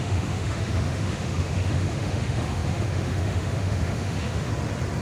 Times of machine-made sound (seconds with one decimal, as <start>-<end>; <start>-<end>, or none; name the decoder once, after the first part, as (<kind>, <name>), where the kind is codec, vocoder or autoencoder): 0.0-4.5 (autoencoder, DAC-VAE)